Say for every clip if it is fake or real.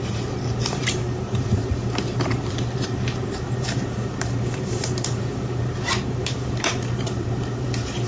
fake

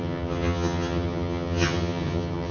fake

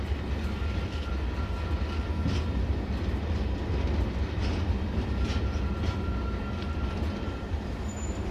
real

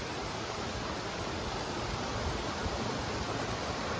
real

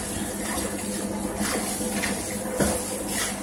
real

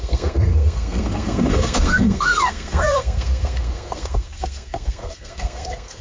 fake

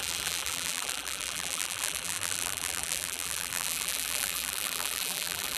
fake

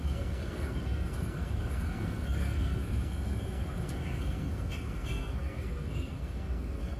fake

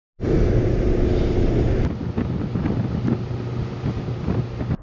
real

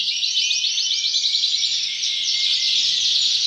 real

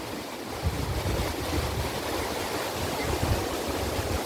real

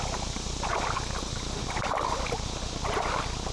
real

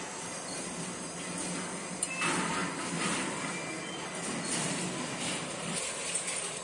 real